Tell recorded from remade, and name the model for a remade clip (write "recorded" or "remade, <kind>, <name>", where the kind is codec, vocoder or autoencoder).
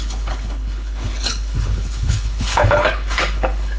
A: remade, codec, HILCodec